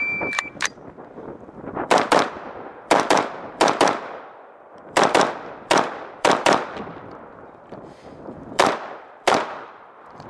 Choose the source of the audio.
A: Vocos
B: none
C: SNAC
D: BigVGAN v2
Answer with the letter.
D